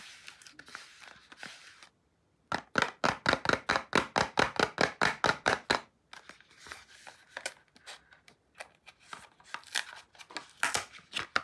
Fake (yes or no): no